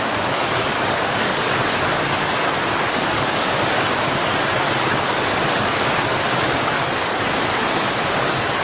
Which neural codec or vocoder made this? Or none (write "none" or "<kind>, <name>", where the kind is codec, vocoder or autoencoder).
codec, DAC